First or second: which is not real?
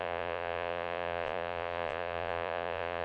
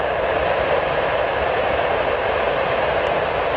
first